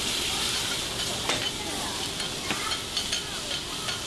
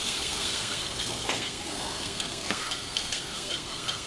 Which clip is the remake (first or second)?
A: second